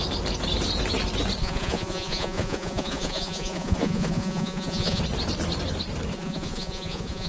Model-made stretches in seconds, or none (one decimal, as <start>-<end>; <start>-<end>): 1.4-5.0; 6.1-7.3